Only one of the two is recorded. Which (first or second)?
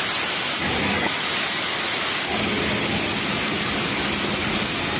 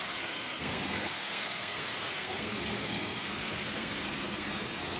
first